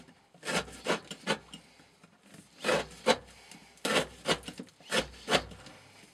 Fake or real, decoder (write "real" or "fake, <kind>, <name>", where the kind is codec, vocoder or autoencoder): real